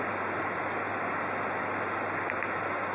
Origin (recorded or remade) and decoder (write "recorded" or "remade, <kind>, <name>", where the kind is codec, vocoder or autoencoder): recorded